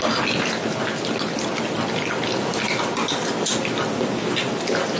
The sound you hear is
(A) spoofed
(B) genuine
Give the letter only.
B